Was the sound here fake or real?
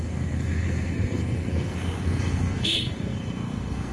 fake